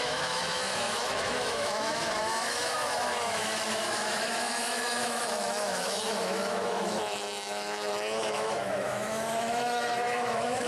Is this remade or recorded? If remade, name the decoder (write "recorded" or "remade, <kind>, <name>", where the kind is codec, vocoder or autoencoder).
remade, autoencoder, DAC-VAE